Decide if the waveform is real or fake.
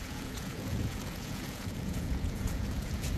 fake